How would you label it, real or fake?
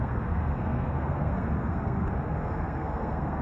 fake